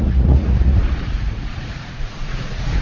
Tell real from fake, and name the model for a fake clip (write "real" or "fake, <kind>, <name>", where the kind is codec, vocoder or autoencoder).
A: fake, vocoder, Vocos